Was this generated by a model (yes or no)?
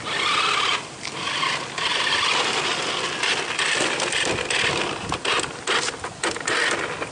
no